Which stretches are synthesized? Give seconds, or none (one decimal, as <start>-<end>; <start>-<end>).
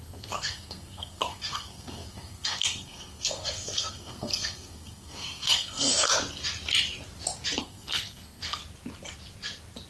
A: 0.0-6.1; 7.6-8.6